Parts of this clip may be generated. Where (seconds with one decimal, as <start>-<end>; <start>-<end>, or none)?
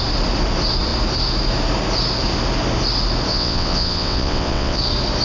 3.3-4.8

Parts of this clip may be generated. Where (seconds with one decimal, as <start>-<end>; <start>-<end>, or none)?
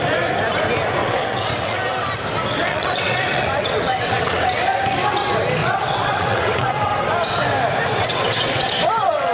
1.0-1.8; 2.6-4.5; 5.6-6.9; 8.0-9.3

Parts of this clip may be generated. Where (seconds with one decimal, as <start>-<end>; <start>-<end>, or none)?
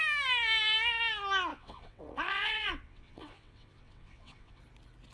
1.5-4.6